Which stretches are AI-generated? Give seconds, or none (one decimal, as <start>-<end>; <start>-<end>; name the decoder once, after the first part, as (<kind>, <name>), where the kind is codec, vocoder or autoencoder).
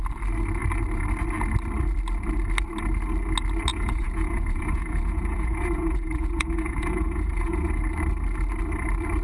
3.7-7.7 (vocoder, Vocos)